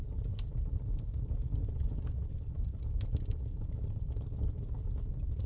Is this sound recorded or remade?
recorded